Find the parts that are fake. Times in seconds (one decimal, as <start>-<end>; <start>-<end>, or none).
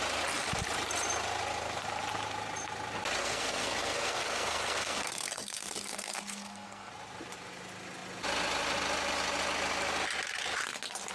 3.2-6.9